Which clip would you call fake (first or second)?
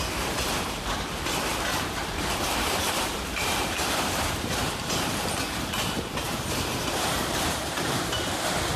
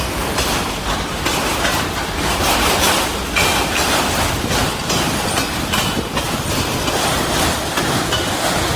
first